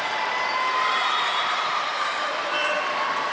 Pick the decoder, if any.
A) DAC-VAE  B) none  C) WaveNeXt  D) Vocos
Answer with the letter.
B